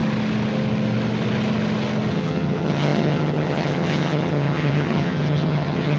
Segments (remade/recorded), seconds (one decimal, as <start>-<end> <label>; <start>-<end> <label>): 0.0-2.1 recorded; 2.1-6.0 remade